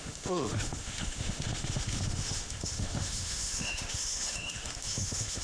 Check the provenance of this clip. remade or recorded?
remade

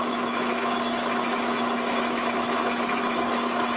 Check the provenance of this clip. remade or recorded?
remade